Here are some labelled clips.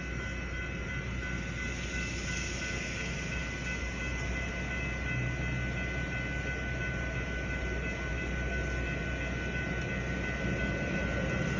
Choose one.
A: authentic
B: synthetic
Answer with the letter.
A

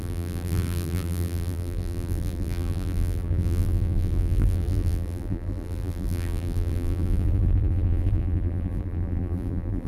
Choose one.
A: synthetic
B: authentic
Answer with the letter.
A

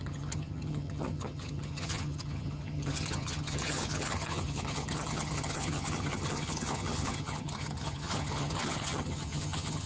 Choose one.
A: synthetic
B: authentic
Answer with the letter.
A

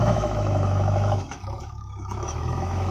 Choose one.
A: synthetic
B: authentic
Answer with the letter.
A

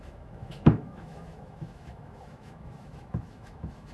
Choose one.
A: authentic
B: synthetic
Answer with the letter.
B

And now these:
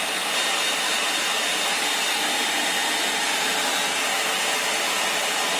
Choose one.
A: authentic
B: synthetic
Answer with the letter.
A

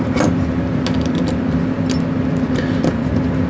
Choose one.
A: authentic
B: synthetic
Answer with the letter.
A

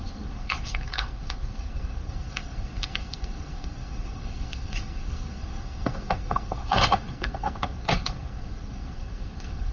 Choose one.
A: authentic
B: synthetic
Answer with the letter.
B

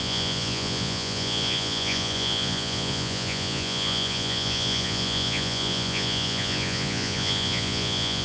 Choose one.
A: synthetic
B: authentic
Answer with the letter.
A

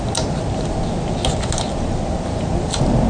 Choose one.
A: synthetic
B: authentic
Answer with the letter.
B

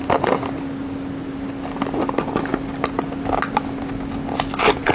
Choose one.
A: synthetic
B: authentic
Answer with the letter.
B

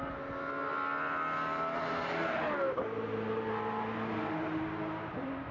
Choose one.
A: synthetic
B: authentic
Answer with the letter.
B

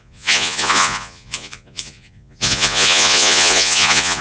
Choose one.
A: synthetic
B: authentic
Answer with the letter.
A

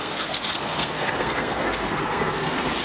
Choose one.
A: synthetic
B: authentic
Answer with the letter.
A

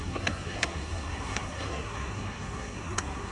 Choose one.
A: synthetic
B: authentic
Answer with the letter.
A